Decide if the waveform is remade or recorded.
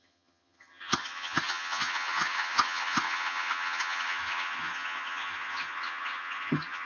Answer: remade